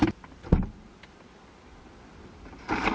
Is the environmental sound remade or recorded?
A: recorded